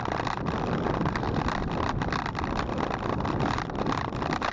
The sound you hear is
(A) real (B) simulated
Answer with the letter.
A